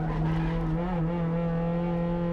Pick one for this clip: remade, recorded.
recorded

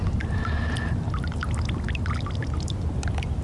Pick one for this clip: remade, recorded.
recorded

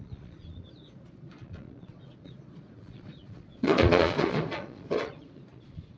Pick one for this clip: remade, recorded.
remade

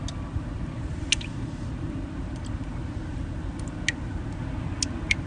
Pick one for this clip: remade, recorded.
recorded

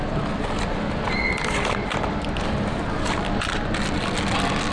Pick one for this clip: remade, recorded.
recorded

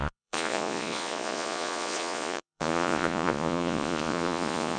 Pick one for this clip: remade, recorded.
remade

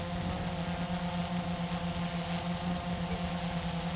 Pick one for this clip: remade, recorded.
recorded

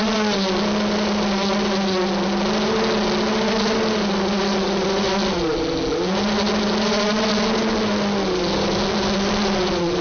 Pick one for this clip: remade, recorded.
recorded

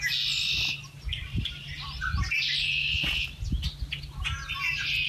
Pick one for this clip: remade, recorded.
recorded